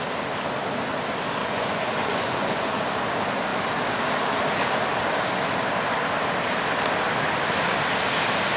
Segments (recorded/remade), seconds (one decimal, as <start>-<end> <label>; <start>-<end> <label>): 0.0-1.4 recorded; 1.4-2.8 remade; 2.8-8.6 recorded